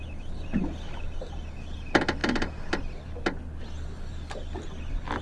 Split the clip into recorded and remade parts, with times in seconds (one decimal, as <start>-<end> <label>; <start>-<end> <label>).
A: 0.0-5.2 recorded